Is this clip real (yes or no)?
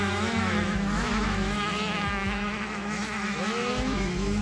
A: no